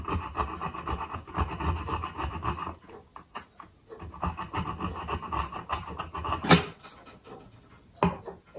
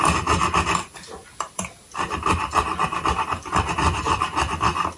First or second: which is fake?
second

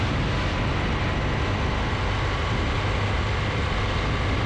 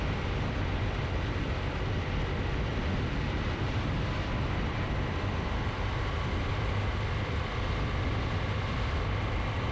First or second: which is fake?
second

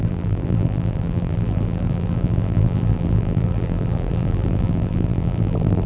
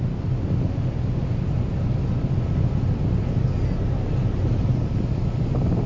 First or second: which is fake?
first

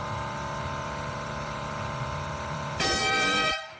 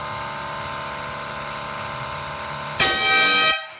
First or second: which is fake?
first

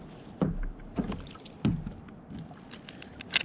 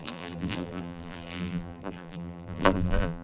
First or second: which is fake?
second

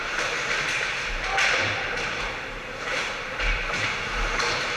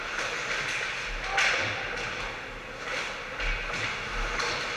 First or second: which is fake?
first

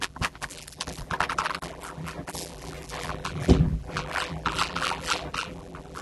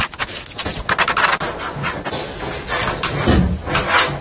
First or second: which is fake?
first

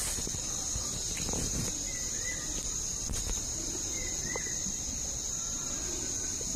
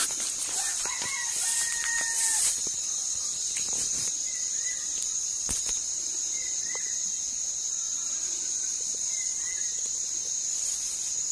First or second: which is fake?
second